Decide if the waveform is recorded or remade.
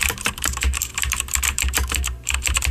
remade